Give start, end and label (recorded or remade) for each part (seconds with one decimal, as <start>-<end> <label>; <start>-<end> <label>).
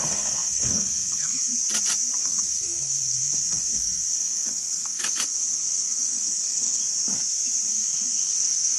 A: 0.0-1.5 remade; 1.5-2.2 recorded; 2.2-6.8 remade; 6.8-7.7 recorded; 7.7-8.8 remade